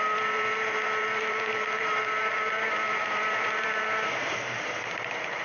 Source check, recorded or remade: remade